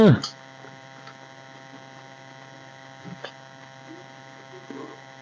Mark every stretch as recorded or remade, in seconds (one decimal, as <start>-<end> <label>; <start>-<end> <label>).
0.0-5.2 recorded